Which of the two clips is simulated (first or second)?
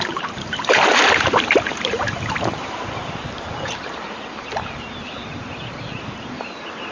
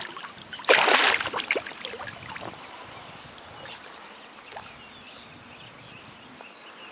first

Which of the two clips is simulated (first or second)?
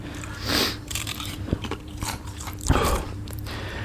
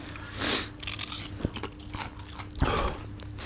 first